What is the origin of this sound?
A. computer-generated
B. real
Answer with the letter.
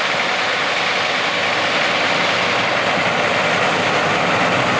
B